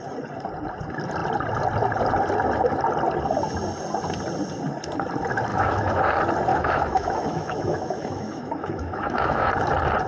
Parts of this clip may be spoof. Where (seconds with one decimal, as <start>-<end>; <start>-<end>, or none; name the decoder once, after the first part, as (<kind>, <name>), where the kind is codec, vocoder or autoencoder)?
5.5-6.0 (autoencoder, DAC-VAE); 6.5-9.5